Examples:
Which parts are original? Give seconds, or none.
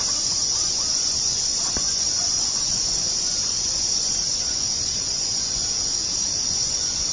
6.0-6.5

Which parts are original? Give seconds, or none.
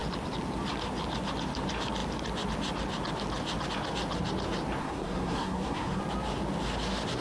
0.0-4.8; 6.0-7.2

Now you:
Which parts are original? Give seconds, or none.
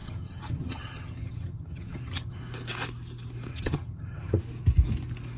2.4-3.5; 4.4-5.4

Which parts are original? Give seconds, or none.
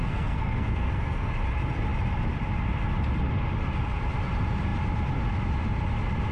1.3-6.3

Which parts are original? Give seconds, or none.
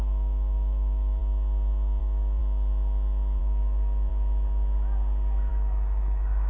1.2-2.0; 2.4-3.4; 4.1-5.5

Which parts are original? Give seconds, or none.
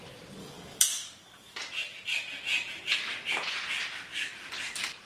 0.0-0.4; 1.6-5.1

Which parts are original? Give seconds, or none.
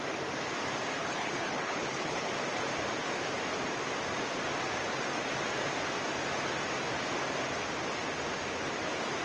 0.0-1.0; 2.3-9.2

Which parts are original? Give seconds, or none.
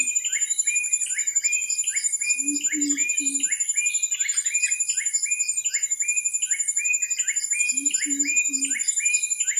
3.0-7.4